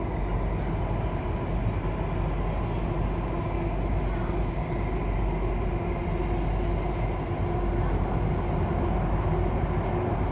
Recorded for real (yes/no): yes